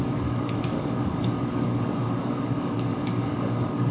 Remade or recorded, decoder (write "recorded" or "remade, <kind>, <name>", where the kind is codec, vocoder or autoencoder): remade, codec, DAC